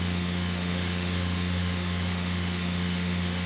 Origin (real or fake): fake